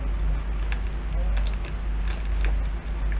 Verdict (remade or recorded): recorded